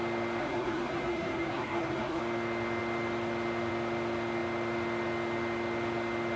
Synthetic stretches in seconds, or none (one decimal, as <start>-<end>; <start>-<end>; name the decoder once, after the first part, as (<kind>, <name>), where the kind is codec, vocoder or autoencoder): 0.4-2.2 (codec, SNAC)